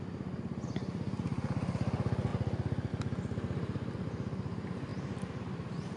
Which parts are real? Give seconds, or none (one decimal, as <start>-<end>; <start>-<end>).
0.0-6.0